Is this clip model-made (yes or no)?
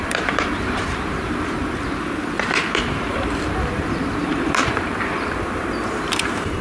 yes